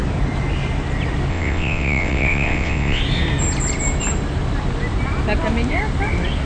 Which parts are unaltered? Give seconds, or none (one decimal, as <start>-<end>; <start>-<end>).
0.0-1.3; 3.0-6.5